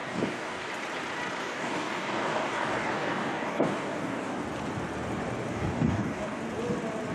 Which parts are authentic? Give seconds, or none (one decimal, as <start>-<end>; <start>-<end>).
0.7-1.4; 4.4-5.5; 6.4-7.1